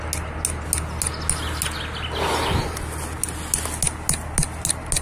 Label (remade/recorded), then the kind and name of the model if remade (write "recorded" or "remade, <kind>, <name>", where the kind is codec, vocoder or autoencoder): recorded